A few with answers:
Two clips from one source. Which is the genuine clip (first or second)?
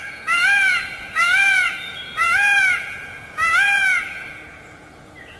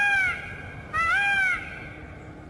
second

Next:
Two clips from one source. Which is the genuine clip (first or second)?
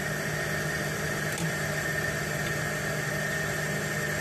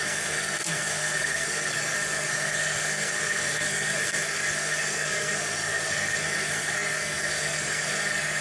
first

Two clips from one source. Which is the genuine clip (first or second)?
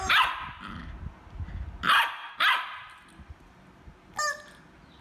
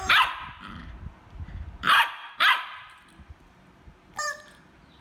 first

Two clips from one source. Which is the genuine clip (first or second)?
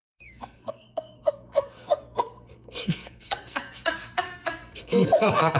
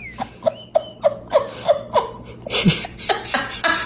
second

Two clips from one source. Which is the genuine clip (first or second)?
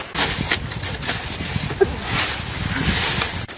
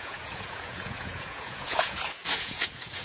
first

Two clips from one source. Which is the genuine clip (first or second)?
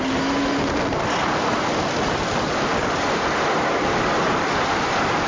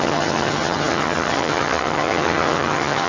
first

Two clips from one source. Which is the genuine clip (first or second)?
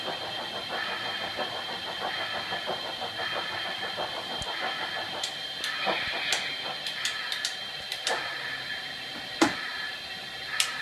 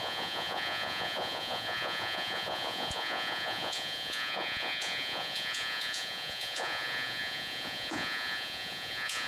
first